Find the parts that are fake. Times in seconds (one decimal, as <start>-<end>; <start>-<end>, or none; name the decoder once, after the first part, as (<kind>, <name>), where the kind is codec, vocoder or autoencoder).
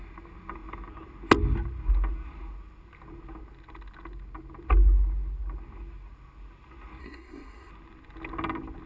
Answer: 7.0-7.7 (codec, SNAC)